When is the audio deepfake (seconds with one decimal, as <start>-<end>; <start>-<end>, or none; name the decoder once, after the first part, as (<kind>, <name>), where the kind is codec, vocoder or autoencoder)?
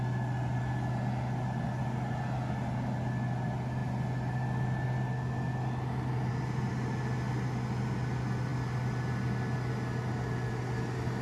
none